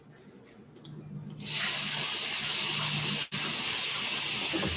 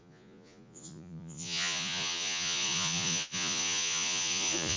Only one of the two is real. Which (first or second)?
first